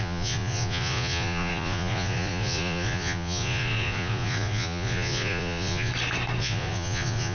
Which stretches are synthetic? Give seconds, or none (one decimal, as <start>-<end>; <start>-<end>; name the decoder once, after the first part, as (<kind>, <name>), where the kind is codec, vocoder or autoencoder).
0.0-5.9 (vocoder, Vocos); 6.4-7.3